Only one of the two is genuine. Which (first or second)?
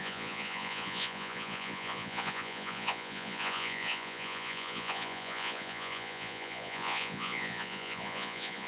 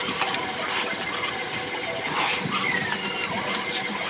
second